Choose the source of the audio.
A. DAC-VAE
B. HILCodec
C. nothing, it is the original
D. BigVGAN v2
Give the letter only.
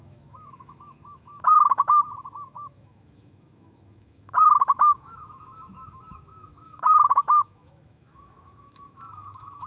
A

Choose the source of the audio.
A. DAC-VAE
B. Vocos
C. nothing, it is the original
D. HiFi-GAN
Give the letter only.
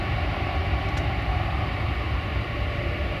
C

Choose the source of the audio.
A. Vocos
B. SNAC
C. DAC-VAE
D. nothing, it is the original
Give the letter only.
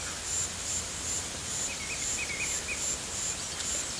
D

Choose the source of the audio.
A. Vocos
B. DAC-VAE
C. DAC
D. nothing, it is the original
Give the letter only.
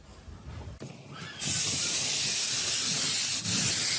D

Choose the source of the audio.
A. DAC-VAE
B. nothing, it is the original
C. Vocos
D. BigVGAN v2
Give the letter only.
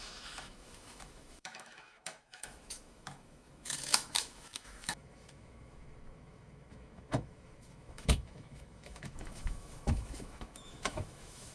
A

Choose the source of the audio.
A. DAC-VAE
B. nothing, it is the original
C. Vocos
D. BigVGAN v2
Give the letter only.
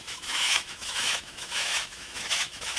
A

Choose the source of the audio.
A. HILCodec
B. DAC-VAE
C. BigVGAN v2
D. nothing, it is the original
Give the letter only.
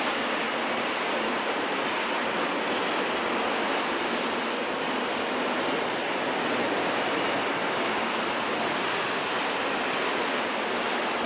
D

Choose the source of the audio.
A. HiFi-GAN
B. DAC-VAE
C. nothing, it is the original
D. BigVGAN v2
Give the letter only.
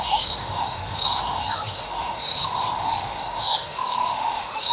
B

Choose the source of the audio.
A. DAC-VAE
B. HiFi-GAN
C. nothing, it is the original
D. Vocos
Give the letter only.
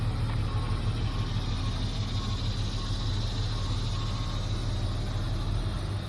C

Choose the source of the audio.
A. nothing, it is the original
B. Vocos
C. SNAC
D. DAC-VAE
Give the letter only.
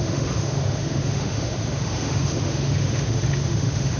D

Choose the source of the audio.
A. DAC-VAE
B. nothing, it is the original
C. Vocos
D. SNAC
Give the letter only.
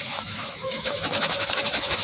A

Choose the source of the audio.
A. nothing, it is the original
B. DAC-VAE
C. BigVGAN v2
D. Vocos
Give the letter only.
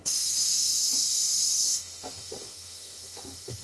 B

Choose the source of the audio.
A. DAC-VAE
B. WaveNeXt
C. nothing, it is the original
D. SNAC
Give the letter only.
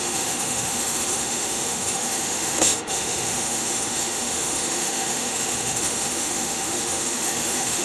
A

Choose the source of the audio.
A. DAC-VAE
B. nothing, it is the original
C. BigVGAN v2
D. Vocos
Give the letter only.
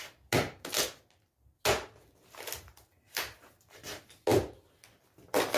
B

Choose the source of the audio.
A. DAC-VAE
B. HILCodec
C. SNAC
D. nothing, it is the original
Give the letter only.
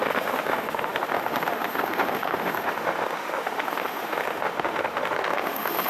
A